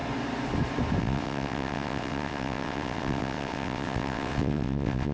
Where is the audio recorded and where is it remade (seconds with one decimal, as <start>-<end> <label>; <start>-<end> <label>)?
0.0-1.0 recorded; 1.0-5.1 remade